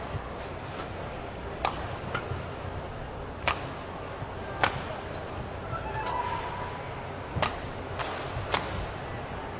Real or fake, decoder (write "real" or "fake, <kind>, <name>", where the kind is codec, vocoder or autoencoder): real